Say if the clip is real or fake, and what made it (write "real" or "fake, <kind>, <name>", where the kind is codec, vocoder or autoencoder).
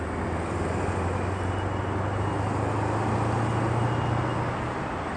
real